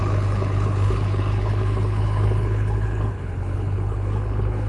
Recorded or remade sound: remade